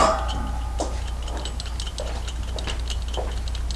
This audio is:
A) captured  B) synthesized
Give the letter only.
A